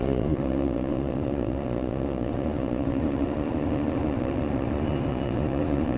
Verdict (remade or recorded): remade